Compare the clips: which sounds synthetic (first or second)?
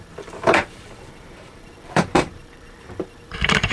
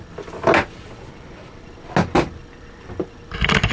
first